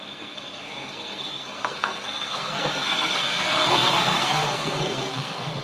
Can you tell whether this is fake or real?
fake